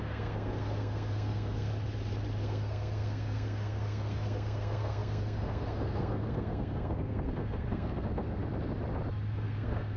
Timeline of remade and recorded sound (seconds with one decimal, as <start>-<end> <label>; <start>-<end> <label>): 0.0-1.7 remade; 1.7-2.4 recorded; 2.4-8.4 remade; 8.4-9.3 recorded; 9.3-10.0 remade